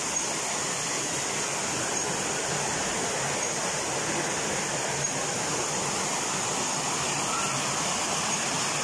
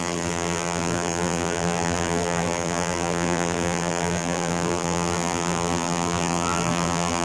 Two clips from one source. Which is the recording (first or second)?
first